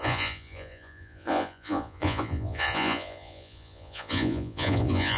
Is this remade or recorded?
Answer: remade